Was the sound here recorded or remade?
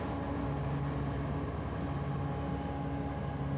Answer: recorded